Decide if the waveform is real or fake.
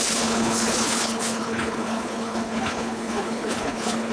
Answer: fake